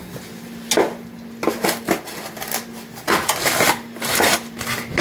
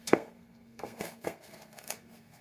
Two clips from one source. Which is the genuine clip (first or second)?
first